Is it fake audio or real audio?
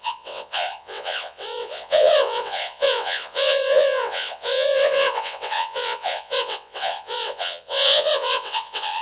fake